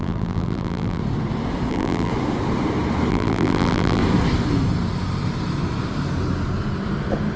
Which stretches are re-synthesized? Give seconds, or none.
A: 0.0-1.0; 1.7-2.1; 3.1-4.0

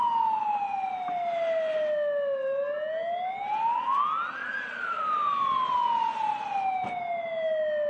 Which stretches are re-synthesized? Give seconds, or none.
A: 4.4-5.0

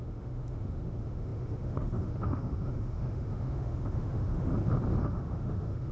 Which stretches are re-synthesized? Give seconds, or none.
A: 0.0-4.5; 5.0-5.9

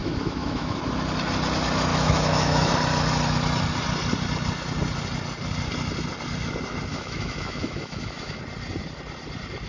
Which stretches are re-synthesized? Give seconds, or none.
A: 0.0-0.8; 1.9-2.7; 6.9-8.4

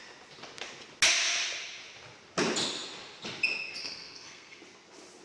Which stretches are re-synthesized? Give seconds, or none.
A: 3.8-4.6

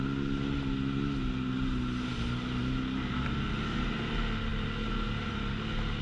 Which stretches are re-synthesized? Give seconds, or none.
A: none

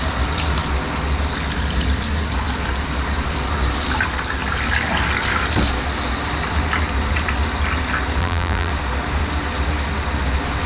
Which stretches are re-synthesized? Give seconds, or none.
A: 8.2-8.7

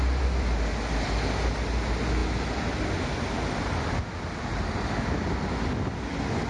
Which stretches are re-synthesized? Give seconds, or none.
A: none